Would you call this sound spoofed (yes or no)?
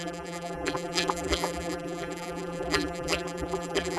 yes